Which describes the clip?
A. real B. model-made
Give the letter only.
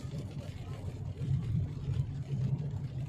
B